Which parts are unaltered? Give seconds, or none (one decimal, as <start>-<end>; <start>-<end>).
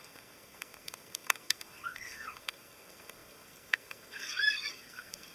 none